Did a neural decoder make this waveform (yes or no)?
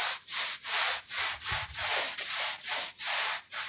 no